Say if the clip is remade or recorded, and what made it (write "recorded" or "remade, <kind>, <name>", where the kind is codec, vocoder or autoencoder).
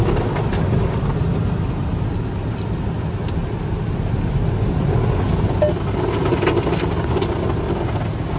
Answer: recorded